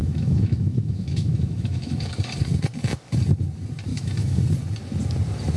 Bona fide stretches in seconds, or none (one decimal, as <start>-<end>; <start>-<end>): 2.1-3.9; 4.4-5.6